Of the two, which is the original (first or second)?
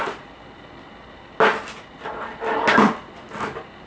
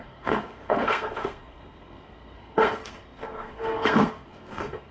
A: first